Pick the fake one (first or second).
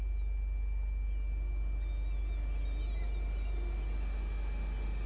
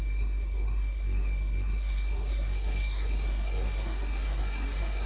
second